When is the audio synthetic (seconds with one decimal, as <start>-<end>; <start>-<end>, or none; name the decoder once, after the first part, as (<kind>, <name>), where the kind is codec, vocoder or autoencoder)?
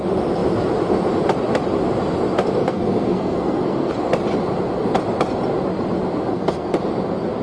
2.6-3.9 (codec, SNAC); 6.3-6.8